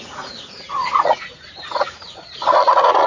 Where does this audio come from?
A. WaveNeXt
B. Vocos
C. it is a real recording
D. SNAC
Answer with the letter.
B